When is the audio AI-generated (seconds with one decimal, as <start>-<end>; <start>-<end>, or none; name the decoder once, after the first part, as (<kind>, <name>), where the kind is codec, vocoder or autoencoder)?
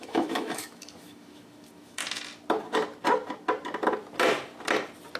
0.0-2.0 (autoencoder, DAC-VAE)